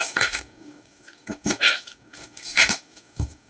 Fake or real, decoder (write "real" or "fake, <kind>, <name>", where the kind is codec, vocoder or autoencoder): fake, codec, DAC